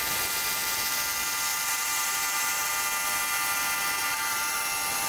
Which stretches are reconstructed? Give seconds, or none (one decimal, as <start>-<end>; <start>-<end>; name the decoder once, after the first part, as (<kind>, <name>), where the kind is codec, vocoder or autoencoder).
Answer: 1.5-2.7 (vocoder, BigVGAN v2); 4.0-4.6